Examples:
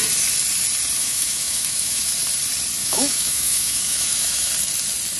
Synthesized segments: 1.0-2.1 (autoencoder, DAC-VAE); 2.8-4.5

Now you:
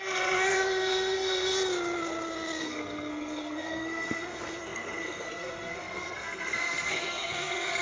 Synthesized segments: 0.0-1.5 (codec, SNAC); 2.6-7.8